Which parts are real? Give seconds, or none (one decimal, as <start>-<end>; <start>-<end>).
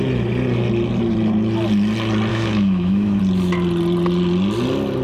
0.0-2.3; 3.2-5.0